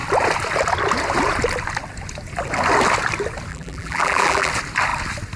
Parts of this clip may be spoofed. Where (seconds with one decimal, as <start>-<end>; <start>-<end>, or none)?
3.5-4.5